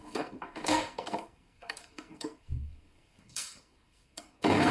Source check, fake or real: fake